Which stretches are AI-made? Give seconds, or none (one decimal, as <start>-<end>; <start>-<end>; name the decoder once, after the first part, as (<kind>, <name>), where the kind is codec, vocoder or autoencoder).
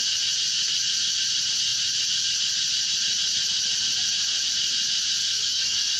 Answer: 5.2-6.0 (codec, DAC)